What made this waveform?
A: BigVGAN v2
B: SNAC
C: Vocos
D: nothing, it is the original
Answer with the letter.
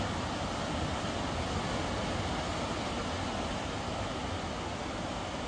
D